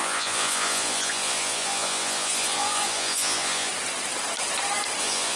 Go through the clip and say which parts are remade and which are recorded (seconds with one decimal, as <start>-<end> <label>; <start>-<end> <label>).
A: 0.0-3.7 remade; 3.7-5.0 recorded; 5.0-5.4 remade